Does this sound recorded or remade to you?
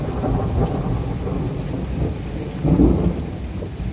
recorded